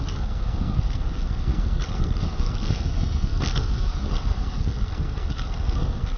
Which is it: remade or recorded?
remade